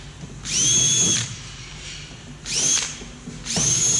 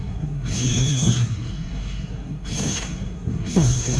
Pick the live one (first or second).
first